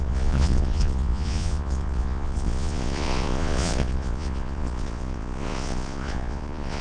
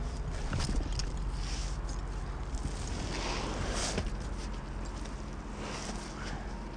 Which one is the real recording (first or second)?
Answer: second